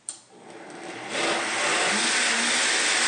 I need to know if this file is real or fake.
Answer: real